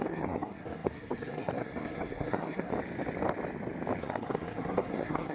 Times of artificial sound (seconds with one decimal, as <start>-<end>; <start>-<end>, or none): 0.0-2.7; 4.0-5.3